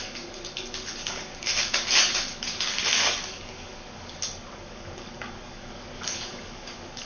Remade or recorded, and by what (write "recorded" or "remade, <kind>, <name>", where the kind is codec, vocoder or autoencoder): remade, codec, DAC